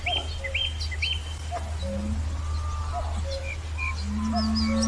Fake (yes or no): no